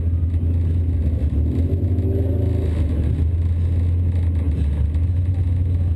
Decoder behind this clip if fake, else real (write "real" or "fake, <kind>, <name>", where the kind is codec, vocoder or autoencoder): real